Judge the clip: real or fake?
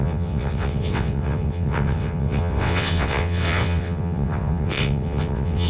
fake